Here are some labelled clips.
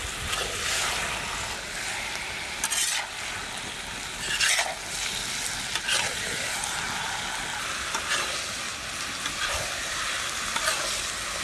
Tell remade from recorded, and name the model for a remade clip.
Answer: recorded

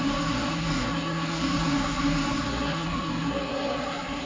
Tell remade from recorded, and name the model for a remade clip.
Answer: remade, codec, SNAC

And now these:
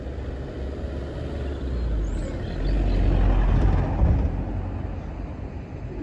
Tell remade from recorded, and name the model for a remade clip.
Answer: recorded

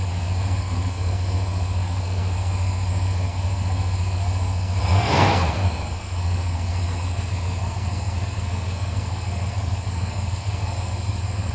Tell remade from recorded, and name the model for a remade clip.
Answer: remade, codec, SNAC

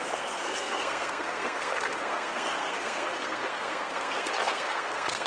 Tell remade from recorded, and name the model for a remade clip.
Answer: remade, codec, SNAC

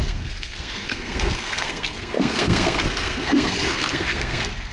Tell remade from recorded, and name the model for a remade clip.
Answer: remade, codec, SNAC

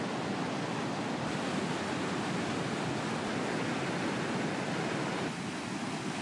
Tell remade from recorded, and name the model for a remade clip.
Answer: recorded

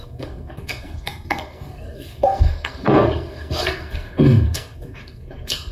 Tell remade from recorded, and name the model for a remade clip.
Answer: remade, codec, SNAC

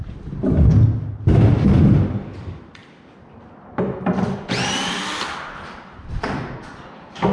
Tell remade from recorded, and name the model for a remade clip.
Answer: recorded